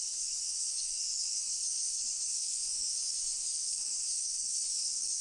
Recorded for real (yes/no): no